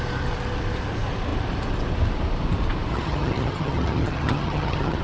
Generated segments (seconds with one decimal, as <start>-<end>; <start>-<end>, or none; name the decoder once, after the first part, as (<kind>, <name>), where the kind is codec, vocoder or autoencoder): 2.9-5.0 (vocoder, HiFi-GAN)